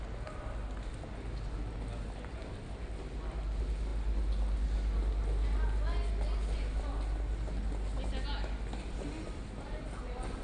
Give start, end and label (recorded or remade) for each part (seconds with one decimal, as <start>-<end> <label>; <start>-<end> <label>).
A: 0.0-10.4 recorded